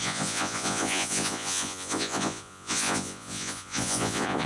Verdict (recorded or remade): remade